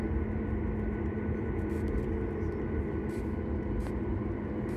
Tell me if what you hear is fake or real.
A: real